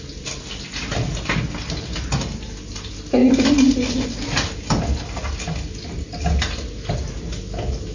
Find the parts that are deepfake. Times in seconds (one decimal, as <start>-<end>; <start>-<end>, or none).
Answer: none